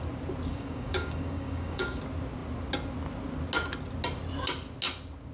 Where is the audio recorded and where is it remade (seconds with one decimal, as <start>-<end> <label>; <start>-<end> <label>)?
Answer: 0.0-0.5 recorded; 0.5-2.0 remade; 2.0-5.3 recorded